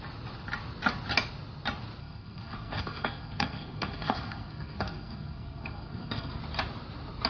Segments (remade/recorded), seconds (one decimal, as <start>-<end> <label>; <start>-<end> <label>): 0.0-2.0 recorded; 2.0-6.4 remade; 6.4-7.3 recorded